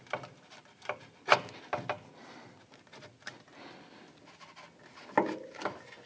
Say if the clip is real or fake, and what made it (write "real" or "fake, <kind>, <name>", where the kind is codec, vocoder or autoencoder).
real